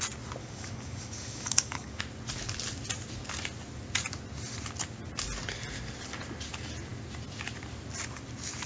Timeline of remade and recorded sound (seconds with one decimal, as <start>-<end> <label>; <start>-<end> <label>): 0.0-0.4 recorded; 0.4-2.0 remade; 2.0-8.7 recorded